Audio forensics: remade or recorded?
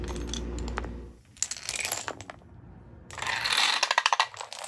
recorded